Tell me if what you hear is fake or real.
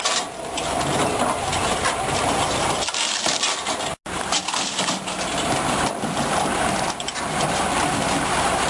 real